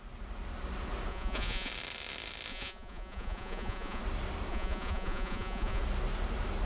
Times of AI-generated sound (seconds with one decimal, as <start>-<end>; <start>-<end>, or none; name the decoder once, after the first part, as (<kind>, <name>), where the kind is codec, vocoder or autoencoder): 1.1-1.7 (vocoder, Vocos); 2.5-4.0; 4.5-5.8